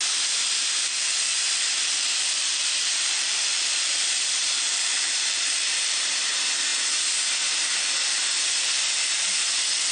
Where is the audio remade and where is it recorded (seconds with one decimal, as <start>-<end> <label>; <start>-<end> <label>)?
0.0-1.3 recorded; 1.3-6.0 remade; 6.0-9.9 recorded

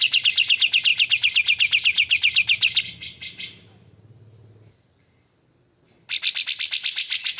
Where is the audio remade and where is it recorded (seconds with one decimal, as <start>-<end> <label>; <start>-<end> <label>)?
0.0-7.4 recorded

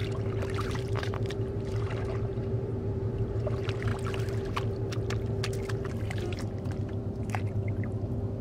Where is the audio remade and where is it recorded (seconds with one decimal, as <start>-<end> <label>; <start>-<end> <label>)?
0.0-3.9 remade; 3.9-6.0 recorded; 6.0-8.4 remade

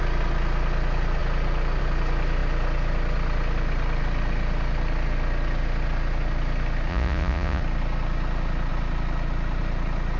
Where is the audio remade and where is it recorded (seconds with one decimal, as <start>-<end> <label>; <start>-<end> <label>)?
0.0-6.9 recorded; 6.9-7.6 remade; 7.6-10.2 recorded

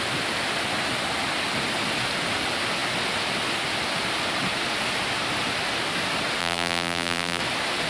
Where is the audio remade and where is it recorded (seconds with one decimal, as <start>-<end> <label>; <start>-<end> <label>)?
0.0-6.4 recorded; 6.4-7.4 remade; 7.4-7.9 recorded